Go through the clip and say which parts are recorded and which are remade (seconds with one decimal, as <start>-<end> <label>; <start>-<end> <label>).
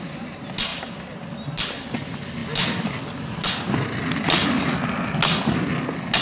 0.0-6.2 recorded